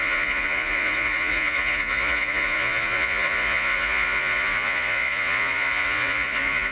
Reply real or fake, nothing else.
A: fake